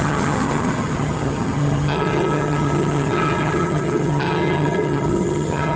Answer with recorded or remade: remade